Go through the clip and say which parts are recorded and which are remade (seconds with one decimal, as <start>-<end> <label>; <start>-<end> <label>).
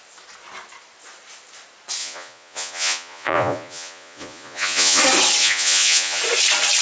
0.0-2.0 recorded; 2.0-5.0 remade; 5.0-5.4 recorded; 5.4-6.2 remade; 6.2-6.8 recorded